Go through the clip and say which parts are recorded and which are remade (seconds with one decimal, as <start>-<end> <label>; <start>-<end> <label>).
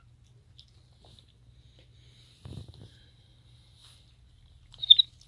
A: 0.0-5.3 recorded